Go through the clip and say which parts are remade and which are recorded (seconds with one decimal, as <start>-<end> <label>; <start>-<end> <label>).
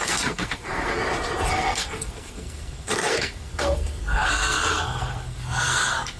0.0-1.0 remade; 1.0-1.5 recorded; 1.5-6.2 remade